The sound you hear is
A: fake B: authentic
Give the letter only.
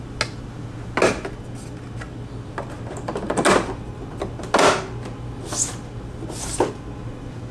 B